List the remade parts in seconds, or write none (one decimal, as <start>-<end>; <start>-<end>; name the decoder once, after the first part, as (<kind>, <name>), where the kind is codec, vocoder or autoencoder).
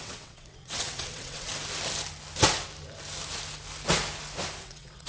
0.0-1.5 (vocoder, WaveNeXt); 4.6-5.1